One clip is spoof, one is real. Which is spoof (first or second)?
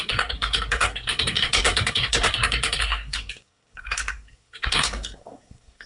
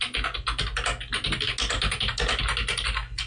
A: first